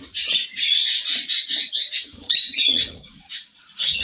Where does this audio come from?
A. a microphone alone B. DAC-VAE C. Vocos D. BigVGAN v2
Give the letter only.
C